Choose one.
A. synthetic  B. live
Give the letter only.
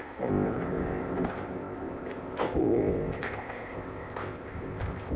A